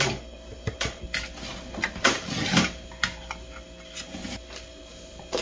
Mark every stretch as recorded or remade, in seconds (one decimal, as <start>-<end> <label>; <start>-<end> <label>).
0.0-1.5 recorded; 1.5-2.9 remade; 2.9-5.4 recorded